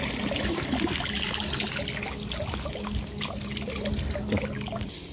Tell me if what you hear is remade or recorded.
recorded